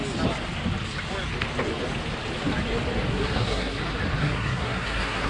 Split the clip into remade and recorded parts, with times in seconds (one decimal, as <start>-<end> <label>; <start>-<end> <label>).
0.0-3.1 recorded; 3.1-3.8 remade; 3.8-4.2 recorded; 4.2-5.3 remade